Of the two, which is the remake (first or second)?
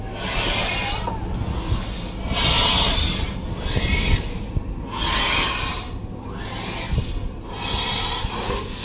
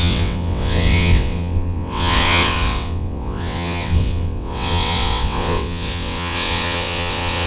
second